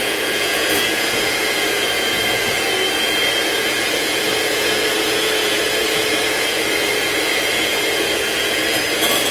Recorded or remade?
remade